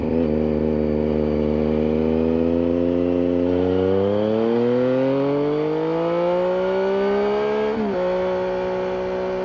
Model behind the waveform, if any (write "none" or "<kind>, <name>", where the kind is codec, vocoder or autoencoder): none